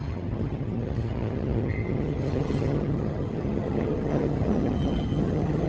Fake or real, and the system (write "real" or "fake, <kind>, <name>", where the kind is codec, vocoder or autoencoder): fake, vocoder, HiFi-GAN